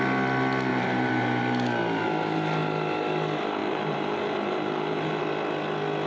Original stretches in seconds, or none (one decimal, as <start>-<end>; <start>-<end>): 0.0-0.7; 1.4-3.6; 5.2-6.1